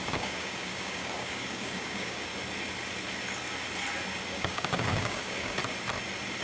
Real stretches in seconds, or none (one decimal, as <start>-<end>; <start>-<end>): 2.3-4.3; 5.6-6.4